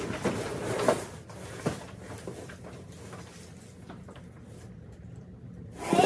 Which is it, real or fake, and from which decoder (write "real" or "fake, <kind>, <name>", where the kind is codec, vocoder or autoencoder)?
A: real